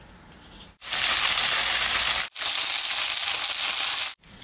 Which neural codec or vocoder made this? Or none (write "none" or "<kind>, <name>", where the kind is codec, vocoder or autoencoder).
none